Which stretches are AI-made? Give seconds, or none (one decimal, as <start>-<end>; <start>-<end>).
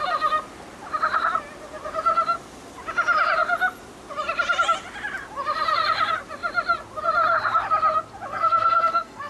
8.3-9.3